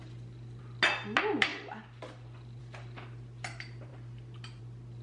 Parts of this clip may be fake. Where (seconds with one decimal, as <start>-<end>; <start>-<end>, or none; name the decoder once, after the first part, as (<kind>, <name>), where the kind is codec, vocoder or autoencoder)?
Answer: none